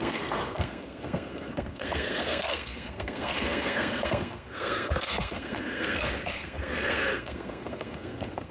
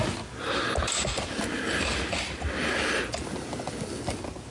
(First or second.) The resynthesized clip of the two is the first